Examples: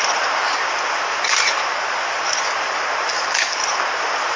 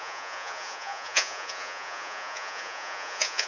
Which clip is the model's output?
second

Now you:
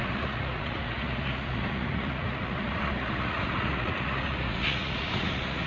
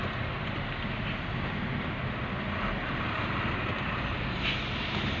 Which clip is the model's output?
first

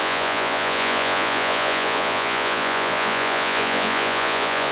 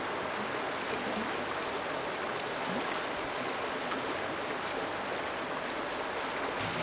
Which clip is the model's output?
first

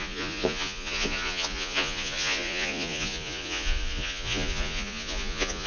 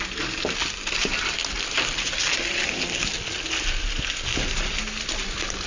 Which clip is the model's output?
first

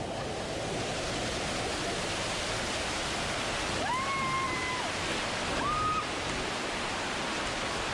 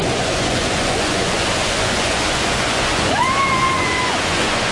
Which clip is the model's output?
second